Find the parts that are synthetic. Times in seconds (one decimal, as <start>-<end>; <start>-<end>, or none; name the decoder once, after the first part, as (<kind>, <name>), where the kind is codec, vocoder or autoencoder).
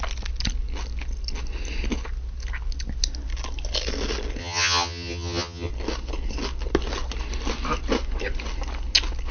4.4-5.7 (vocoder, HiFi-GAN)